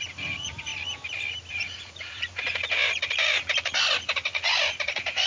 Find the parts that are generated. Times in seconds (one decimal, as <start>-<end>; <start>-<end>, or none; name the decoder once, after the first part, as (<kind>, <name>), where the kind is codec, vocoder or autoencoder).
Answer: 0.0-0.7 (vocoder, Vocos); 1.5-5.3